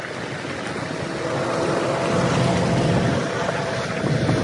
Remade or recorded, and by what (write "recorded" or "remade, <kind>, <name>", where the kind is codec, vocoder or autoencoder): recorded